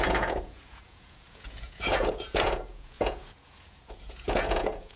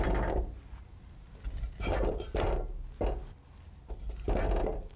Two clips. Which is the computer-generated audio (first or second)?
first